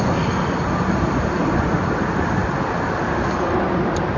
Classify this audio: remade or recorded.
recorded